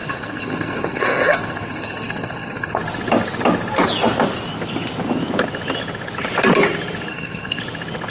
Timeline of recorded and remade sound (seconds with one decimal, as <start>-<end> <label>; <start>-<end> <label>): 0.0-2.8 remade; 2.8-7.1 recorded; 7.1-7.6 remade; 7.6-8.1 recorded